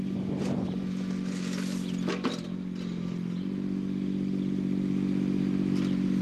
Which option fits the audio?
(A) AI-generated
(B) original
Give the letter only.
B